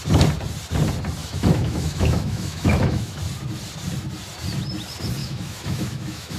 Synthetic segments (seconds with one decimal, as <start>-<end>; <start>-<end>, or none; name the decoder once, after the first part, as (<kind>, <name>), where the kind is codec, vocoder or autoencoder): 1.2-3.2 (autoencoder, DAC-VAE); 5.2-6.4

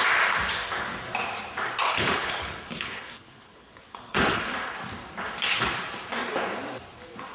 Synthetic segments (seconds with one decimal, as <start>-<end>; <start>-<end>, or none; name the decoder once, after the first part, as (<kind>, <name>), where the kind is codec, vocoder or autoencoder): 1.8-4.4 (codec, HILCodec)

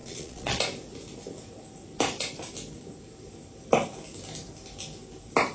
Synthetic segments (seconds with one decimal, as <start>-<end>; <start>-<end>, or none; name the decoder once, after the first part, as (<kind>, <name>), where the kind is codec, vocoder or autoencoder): 0.0-0.6 (vocoder, Vocos)

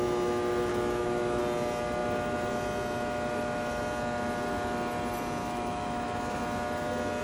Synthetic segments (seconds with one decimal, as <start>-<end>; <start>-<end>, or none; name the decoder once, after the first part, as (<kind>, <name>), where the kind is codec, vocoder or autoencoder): 0.7-1.4 (autoencoder, DAC-VAE); 5.4-6.4

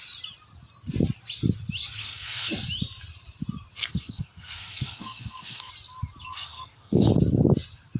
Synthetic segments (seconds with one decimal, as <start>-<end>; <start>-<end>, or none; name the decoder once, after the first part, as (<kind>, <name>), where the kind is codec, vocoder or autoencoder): 2.0-2.5 (codec, SNAC); 3.8-5.7; 6.2-7.1

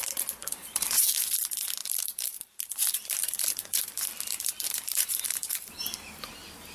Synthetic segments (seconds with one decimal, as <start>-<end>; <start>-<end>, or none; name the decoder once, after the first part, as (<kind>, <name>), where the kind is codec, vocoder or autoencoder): 0.4-1.0 (vocoder, BigVGAN v2); 1.8-5.8